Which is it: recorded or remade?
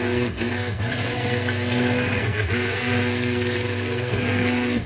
remade